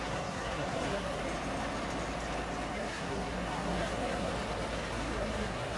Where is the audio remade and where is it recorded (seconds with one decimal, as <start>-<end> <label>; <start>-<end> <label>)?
0.0-1.2 remade; 1.2-2.7 recorded; 2.7-4.3 remade; 4.3-4.9 recorded; 4.9-5.8 remade